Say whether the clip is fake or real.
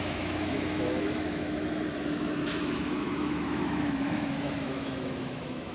fake